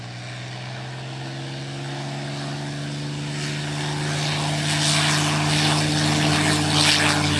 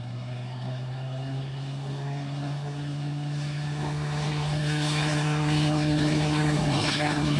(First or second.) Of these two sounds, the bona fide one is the first